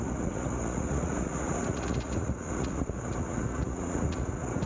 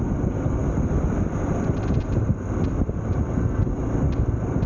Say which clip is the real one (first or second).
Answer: second